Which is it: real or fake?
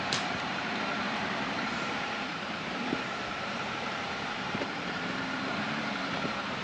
fake